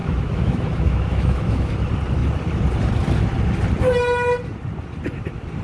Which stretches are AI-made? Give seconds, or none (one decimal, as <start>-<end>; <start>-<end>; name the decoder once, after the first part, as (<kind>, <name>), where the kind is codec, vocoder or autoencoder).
0.0-1.7 (autoencoder, DAC-VAE)